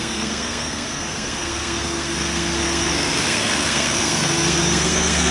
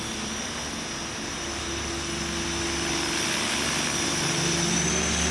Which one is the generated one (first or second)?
first